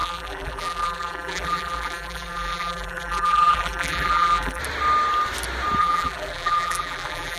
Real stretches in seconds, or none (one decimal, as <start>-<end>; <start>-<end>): 4.6-5.8